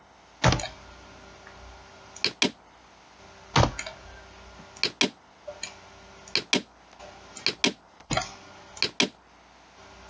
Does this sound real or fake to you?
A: real